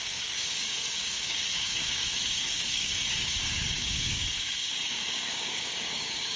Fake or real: fake